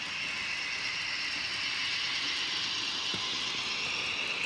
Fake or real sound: real